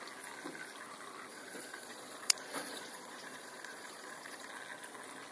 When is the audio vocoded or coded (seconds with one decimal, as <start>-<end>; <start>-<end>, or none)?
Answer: 1.3-4.5